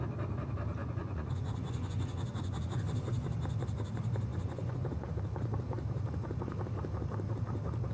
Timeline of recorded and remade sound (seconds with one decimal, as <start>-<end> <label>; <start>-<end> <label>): 0.0-0.8 recorded; 0.8-2.8 remade; 2.8-4.3 recorded; 4.3-5.1 remade; 5.1-7.9 recorded